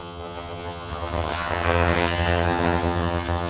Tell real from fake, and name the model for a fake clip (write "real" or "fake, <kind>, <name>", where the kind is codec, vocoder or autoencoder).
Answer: fake, vocoder, HiFi-GAN